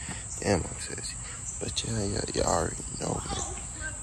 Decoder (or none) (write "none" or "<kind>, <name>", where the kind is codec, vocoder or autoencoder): none